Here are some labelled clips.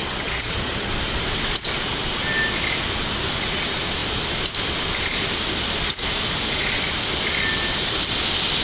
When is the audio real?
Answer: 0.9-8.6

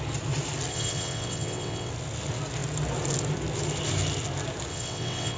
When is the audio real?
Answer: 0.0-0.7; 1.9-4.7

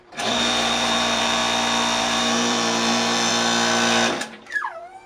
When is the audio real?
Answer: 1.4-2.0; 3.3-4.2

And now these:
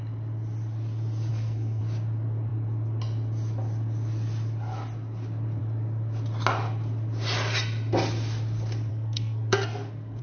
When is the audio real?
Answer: 0.0-1.3; 1.8-8.9

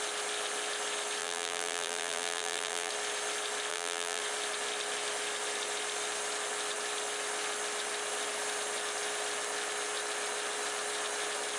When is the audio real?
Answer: 0.0-1.2; 2.9-3.7; 4.2-11.6

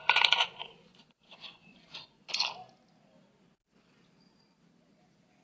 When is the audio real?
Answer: 2.3-5.4